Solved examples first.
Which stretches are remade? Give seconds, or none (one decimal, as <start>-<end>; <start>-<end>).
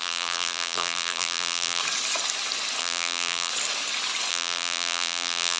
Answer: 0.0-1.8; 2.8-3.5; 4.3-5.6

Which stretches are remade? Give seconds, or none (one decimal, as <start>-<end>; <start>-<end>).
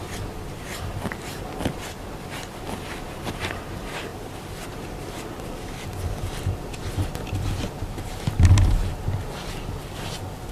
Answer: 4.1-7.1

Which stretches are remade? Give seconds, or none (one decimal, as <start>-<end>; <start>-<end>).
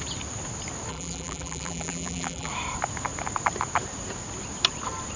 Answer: 0.9-2.5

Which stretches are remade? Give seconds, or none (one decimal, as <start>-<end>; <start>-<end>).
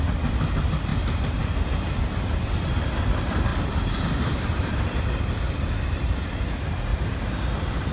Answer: 3.5-4.7; 6.9-7.9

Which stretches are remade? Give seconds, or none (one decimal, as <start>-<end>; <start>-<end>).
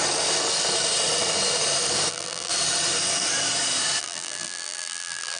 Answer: 2.1-2.5; 4.0-5.4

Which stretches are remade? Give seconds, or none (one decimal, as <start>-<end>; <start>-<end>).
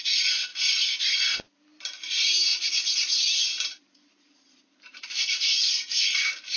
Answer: 2.5-6.6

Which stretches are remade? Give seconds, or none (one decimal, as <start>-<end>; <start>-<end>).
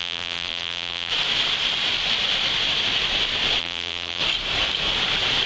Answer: 0.0-1.1; 3.6-4.2